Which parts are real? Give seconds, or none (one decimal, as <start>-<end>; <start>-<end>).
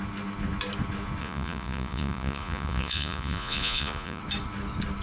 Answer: 0.0-1.2; 4.2-5.0